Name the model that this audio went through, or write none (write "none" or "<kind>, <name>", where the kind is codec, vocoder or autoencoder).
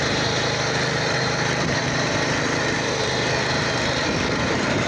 vocoder, BigVGAN v2